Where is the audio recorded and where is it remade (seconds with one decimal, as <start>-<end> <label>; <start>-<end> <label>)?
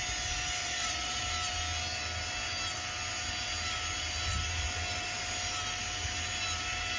0.0-0.6 recorded; 0.6-1.2 remade; 1.2-7.0 recorded